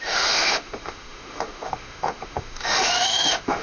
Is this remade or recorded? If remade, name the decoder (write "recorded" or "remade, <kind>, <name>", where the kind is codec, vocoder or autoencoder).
remade, autoencoder, DAC-VAE